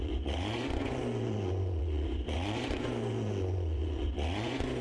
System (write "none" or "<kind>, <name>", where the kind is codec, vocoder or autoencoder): vocoder, Vocos